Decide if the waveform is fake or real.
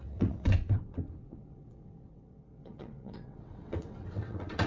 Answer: fake